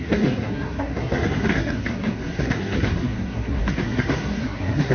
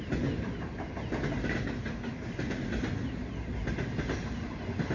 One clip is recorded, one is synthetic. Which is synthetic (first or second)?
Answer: first